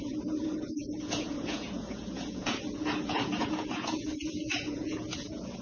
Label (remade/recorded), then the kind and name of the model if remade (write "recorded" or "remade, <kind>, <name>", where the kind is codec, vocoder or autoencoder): remade, vocoder, Vocos